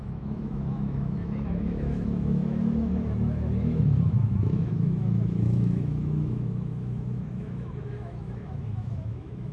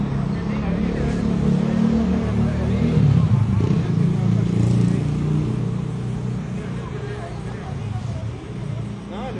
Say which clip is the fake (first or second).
first